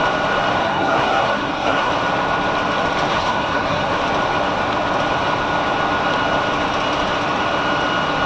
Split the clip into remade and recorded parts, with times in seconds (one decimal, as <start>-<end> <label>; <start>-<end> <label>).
0.0-0.6 recorded; 0.6-1.9 remade; 1.9-3.1 recorded; 3.1-3.9 remade; 3.9-8.3 recorded